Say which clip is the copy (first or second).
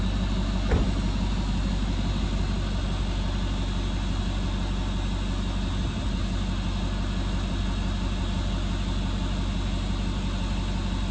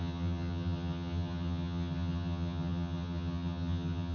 second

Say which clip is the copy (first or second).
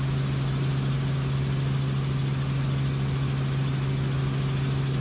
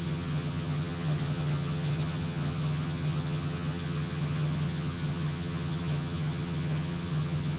second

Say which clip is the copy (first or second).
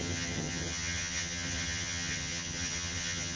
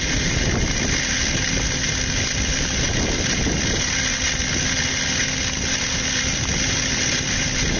first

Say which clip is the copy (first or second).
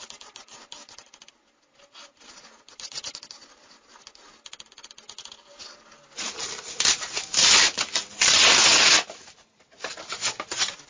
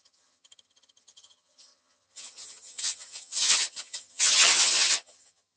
second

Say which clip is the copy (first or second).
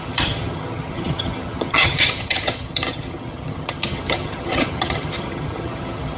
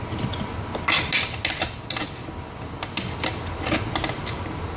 first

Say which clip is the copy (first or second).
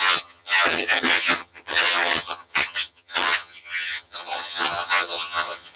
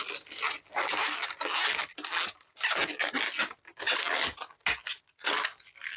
first